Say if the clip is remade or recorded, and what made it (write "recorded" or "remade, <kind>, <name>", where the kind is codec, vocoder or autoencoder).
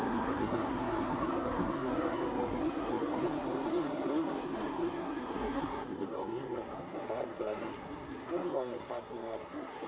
remade, codec, SNAC